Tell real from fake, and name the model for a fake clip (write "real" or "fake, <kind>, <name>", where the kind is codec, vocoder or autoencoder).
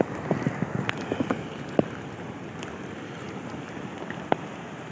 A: real